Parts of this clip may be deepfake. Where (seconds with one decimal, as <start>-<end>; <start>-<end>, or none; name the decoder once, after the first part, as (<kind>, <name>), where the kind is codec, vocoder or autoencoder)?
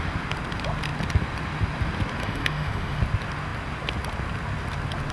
2.2-3.0 (autoencoder, DAC-VAE)